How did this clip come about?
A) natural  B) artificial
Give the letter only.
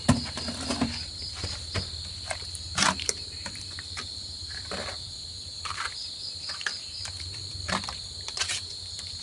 B